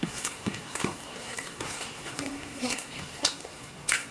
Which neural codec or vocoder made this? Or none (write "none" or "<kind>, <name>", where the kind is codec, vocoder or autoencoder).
codec, SNAC